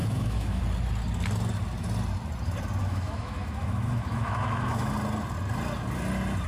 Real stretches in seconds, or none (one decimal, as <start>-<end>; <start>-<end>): 0.6-2.8; 4.9-6.5